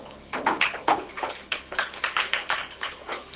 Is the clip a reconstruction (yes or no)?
yes